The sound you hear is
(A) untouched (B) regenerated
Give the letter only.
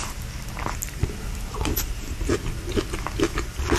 A